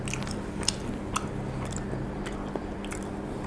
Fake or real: real